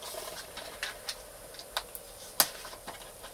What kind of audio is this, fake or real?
real